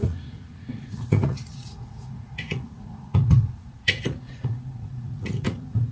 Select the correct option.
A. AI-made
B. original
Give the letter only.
A